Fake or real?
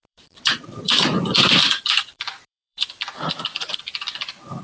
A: fake